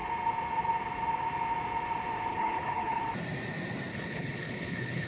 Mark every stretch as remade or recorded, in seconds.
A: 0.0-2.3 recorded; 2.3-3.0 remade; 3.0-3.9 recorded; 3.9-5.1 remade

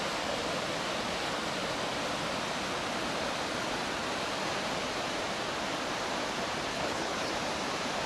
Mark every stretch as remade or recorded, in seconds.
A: 0.0-6.7 recorded; 6.7-7.3 remade; 7.3-8.1 recorded

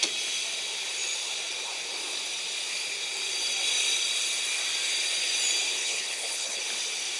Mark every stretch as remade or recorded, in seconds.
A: 0.0-5.8 recorded; 5.8-6.6 remade; 6.6-7.2 recorded

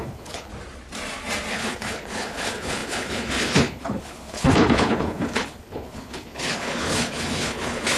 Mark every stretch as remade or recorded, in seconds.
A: 0.0-0.5 remade; 0.5-1.5 recorded; 1.5-8.0 remade

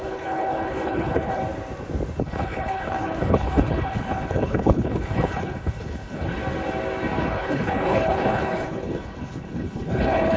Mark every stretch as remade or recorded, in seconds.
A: 0.0-1.4 remade; 1.4-2.2 recorded; 2.2-6.4 remade; 6.4-7.2 recorded; 7.2-10.4 remade